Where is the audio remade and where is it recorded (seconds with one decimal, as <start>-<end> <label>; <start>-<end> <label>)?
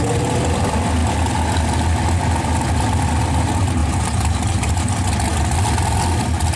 0.0-3.8 recorded; 3.8-4.8 remade; 4.8-6.6 recorded